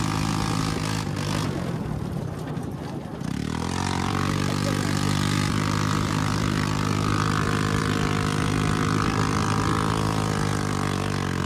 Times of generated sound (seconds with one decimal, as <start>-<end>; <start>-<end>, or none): 3.1-7.8; 10.5-11.1